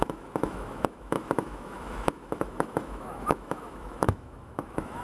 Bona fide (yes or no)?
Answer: no